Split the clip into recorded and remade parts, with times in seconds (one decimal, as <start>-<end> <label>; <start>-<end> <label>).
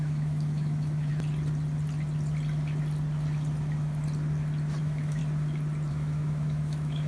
0.0-1.1 remade; 1.1-4.8 recorded; 4.8-5.2 remade; 5.2-5.9 recorded; 5.9-7.1 remade